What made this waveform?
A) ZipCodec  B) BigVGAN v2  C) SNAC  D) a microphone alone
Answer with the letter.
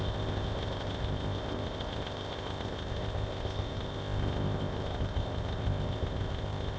A